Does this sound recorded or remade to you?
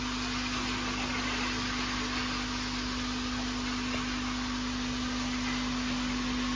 recorded